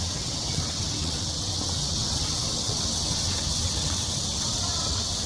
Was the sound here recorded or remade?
remade